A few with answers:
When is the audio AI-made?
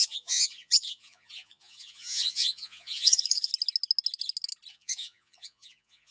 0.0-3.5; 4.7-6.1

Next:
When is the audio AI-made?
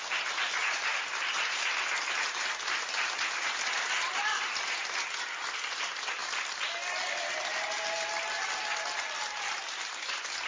none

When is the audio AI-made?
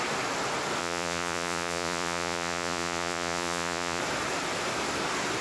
0.8-4.0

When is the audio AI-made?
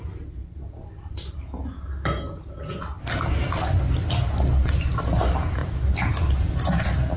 none